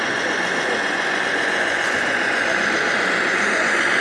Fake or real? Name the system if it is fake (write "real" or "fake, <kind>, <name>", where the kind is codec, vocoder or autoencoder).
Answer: fake, vocoder, Vocos